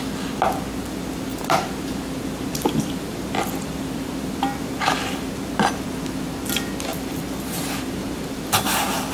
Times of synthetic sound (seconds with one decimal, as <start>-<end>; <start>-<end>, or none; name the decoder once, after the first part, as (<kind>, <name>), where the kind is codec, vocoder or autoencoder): 1.3-5.3 (vocoder, BigVGAN v2); 6.9-8.7